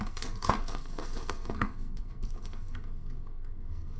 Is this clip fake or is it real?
fake